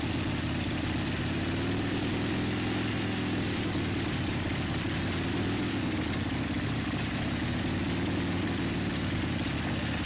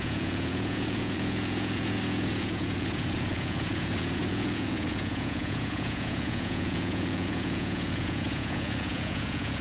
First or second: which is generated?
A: second